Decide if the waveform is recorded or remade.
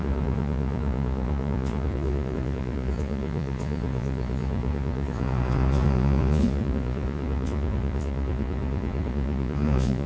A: remade